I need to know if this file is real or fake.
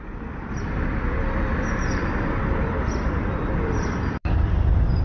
fake